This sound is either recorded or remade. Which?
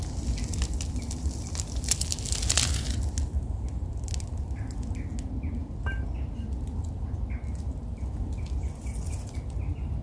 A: recorded